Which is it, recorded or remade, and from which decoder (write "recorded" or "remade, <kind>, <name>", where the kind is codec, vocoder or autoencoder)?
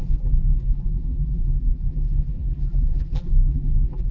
remade, vocoder, BigVGAN v2